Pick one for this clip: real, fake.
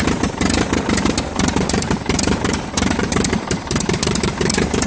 fake